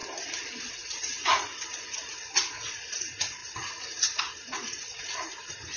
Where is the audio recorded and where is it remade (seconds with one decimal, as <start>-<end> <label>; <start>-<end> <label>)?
0.0-0.7 recorded; 0.7-5.8 remade